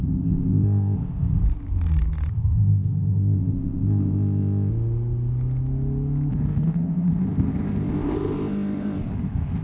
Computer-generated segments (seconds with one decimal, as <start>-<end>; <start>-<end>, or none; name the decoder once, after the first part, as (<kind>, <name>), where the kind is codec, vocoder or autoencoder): 0.0-1.4 (codec, ZipCodec); 2.3-4.7; 6.3-9.6

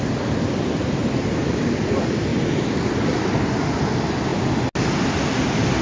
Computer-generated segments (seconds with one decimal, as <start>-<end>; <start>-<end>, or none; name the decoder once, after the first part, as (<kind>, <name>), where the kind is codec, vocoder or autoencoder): none

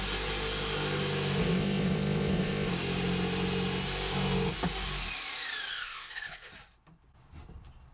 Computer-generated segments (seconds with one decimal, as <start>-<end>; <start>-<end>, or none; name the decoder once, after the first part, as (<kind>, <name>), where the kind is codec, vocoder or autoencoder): 1.4-2.7 (codec, ZipCodec); 5.7-6.5

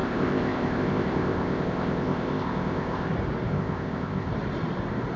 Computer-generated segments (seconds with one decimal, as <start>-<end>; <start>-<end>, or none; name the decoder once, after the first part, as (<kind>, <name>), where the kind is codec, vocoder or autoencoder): 0.0-3.1 (codec, ZipCodec); 3.5-4.3

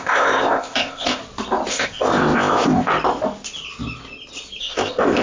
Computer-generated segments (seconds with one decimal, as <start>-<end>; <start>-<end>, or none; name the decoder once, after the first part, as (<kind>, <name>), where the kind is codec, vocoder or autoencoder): 0.0-1.2 (codec, ZipCodec); 1.7-2.9; 4.6-5.2

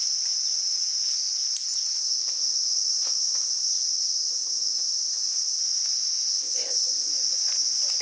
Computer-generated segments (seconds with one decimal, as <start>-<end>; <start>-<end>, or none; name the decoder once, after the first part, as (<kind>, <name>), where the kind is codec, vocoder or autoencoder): 2.0-5.6 (codec, ZipCodec); 6.3-7.1